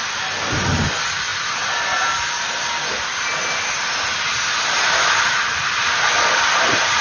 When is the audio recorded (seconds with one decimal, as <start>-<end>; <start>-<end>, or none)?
0.0-7.0